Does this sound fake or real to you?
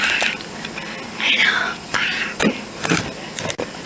real